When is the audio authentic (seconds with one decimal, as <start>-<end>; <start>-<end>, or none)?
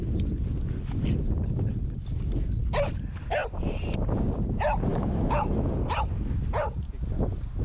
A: 0.0-4.9; 5.7-7.6